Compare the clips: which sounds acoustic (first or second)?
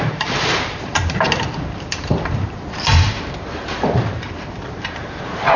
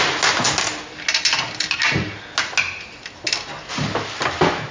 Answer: second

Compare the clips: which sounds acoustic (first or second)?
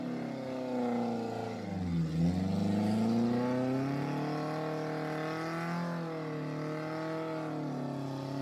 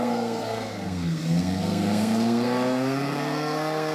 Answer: first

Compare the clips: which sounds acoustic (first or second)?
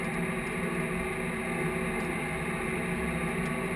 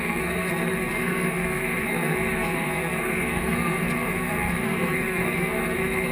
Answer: first